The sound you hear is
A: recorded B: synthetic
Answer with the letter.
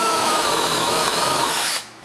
B